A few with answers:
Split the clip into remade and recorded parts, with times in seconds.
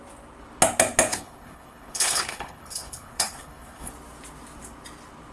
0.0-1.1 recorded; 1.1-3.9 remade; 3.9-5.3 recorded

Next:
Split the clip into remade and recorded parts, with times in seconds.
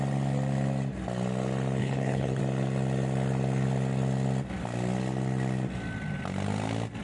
0.0-1.8 recorded; 1.8-2.4 remade; 2.4-7.0 recorded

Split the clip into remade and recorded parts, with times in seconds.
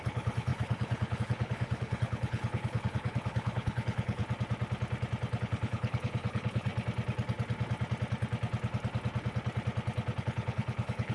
0.0-4.2 remade; 4.2-5.4 recorded; 5.4-6.7 remade; 6.7-10.2 recorded; 10.2-11.1 remade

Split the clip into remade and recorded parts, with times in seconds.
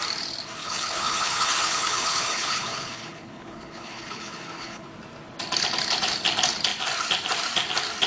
0.0-0.6 recorded; 0.6-4.9 remade; 4.9-8.1 recorded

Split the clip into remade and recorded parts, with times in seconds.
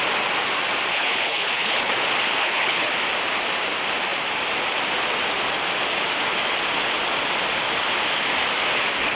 0.0-0.9 recorded; 0.9-1.9 remade; 1.9-2.4 recorded; 2.4-2.9 remade; 2.9-9.2 recorded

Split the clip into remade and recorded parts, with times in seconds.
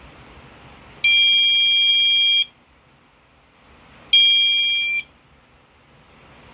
0.0-6.5 recorded